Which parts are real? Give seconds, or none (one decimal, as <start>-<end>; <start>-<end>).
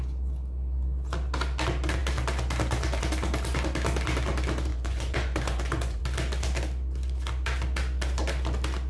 0.0-4.7; 6.0-8.9